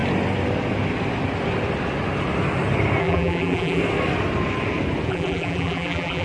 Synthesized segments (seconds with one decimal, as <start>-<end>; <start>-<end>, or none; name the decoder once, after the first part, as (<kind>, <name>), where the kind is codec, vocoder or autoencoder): 3.0-3.8 (vocoder, BigVGAN v2); 5.1-6.2